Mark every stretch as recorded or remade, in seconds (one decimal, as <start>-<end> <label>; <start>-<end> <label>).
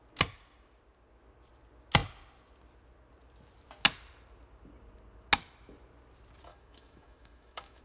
0.0-6.5 recorded; 6.5-7.8 remade